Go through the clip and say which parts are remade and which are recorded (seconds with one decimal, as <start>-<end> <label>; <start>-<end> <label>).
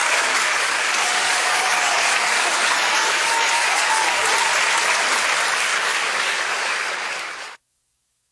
0.0-4.3 remade; 4.3-5.7 recorded; 5.7-8.3 remade